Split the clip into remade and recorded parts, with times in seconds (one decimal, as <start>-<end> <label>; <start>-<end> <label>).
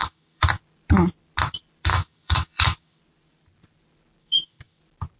0.0-0.6 remade; 0.6-1.9 recorded; 1.9-3.0 remade; 3.0-4.2 recorded; 4.2-4.8 remade; 4.8-5.2 recorded